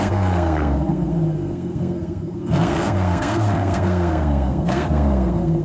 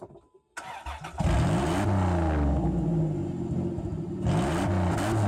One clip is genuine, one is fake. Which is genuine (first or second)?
second